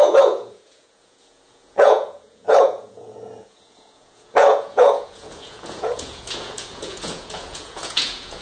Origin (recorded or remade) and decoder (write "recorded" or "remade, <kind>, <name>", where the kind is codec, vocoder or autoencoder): remade, vocoder, Vocos